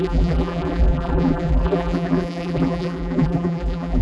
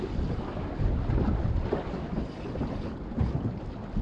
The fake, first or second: first